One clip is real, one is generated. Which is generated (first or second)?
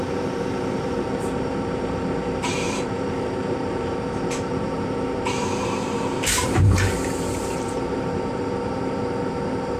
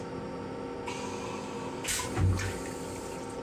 first